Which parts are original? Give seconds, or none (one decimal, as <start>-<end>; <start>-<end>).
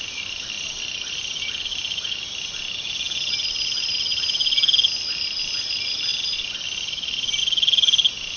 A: 0.0-8.4